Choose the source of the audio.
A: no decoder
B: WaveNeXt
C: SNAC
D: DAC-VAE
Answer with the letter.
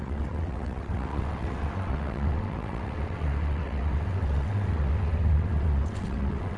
B